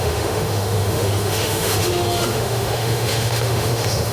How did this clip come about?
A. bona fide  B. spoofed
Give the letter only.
B